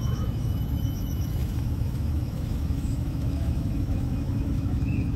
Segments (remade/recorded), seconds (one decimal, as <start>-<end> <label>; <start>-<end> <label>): 0.0-5.2 remade